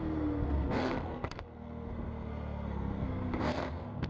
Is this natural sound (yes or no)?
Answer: no